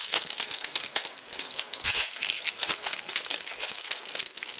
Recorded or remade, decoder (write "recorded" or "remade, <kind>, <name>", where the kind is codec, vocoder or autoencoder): remade, codec, SNAC